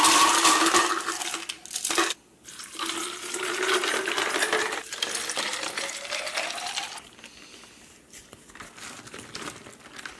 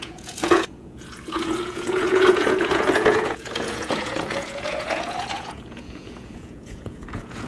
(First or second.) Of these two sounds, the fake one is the second